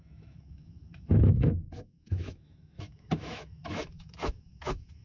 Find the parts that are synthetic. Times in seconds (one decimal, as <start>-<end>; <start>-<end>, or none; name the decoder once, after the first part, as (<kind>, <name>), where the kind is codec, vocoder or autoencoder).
0.0-5.0 (autoencoder, DAC-VAE)